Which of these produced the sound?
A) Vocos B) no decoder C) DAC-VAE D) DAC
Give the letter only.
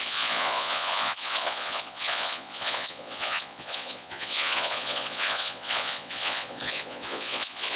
A